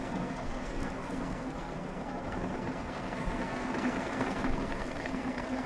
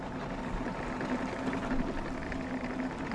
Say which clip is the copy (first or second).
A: first